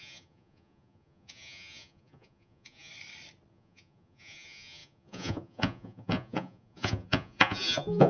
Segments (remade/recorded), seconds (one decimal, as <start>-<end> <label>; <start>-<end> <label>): 0.0-2.9 remade; 2.9-3.5 recorded; 3.5-8.1 remade